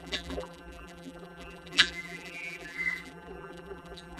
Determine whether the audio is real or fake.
fake